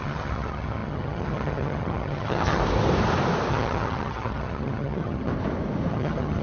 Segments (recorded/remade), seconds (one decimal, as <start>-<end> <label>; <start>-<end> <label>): 0.0-2.6 remade; 2.6-3.5 recorded; 3.5-5.3 remade; 5.3-5.9 recorded; 5.9-6.4 remade